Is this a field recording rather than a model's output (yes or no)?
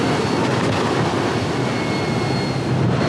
yes